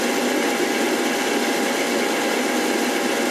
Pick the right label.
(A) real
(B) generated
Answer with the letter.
A